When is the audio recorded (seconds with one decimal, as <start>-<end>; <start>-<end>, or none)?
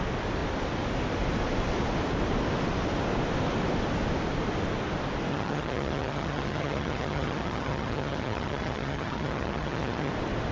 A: 0.0-5.3; 10.1-10.5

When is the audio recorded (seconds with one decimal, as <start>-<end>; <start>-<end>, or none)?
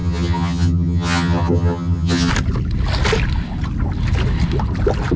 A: 2.3-5.2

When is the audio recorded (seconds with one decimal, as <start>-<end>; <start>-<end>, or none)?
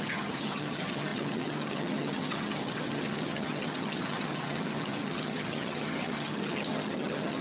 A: none